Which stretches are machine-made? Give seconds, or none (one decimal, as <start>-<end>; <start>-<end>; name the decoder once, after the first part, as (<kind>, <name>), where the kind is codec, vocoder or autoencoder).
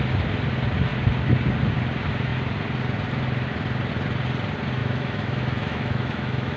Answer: 4.8-6.6 (autoencoder, DAC-VAE)